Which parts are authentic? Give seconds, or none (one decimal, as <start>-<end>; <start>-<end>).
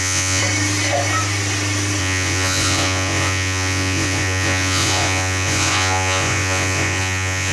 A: 0.4-2.0